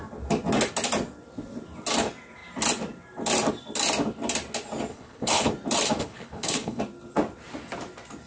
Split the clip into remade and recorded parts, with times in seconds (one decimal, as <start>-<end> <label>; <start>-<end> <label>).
0.0-4.9 recorded; 4.9-5.5 remade; 5.5-6.0 recorded; 6.0-6.8 remade; 6.8-8.3 recorded